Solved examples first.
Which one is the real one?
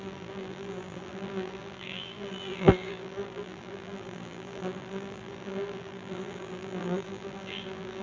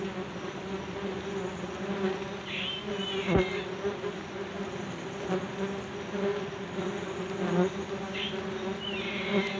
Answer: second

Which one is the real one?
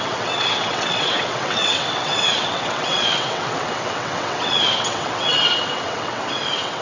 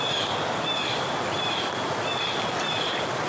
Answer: second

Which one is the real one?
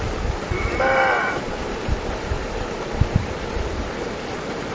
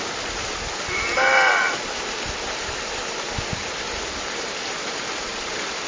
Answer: second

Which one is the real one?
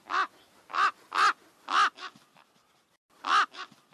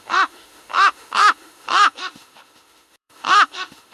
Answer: first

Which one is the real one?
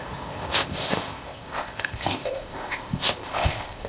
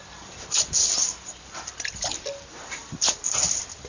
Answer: second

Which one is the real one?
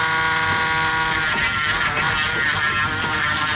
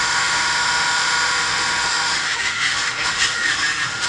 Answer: first